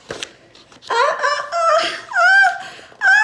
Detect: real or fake real